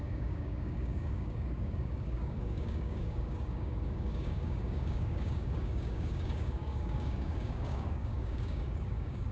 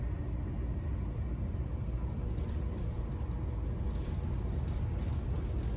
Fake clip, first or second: first